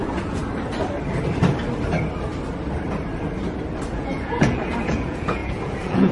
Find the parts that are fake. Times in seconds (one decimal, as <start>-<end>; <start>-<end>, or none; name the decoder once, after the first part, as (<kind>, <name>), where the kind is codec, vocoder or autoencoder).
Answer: 0.0-0.4 (vocoder, Vocos); 3.9-6.1